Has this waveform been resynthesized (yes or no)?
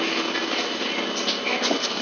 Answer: no